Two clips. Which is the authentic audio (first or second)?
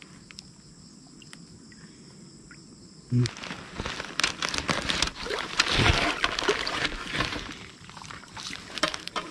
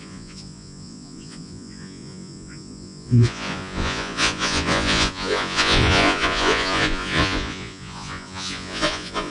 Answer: first